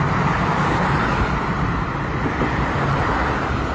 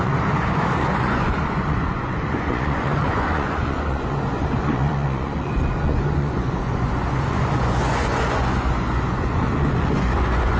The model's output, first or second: second